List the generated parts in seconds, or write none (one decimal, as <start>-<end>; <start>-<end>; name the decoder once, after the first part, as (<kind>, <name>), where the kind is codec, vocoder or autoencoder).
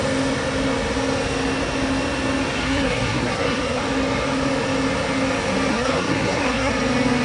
2.6-3.8 (codec, SNAC); 5.7-6.7